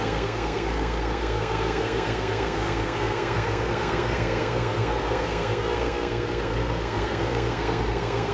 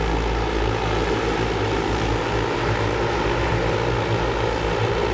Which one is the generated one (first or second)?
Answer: first